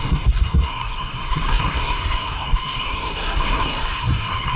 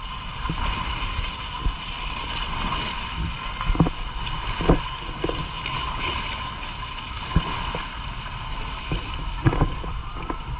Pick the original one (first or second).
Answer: second